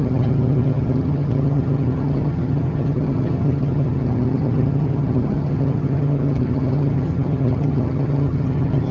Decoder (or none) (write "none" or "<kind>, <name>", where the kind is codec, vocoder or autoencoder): vocoder, HiFi-GAN